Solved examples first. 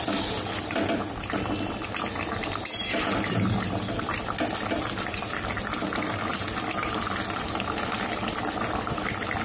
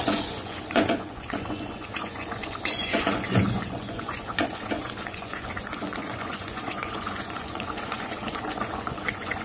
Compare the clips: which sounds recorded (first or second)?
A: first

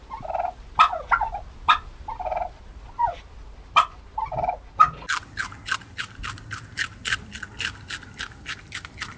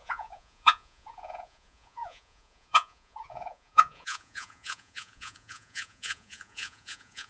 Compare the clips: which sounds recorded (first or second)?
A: first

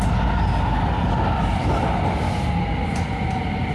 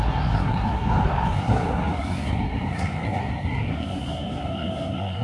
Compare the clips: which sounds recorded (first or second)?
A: first